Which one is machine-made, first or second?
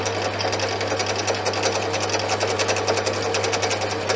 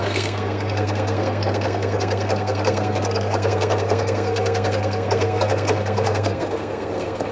second